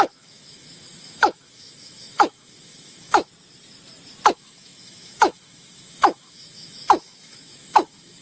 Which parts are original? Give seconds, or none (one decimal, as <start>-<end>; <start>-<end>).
3.3-4.3